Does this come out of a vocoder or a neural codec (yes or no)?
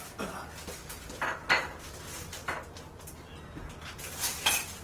no